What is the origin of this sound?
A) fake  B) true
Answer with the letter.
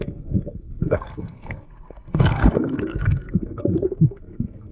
A